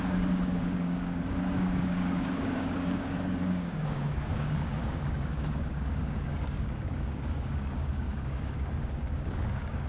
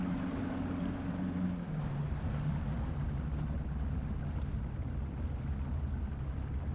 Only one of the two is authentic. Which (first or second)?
second